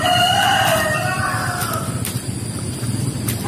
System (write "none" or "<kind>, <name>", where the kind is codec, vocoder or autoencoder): none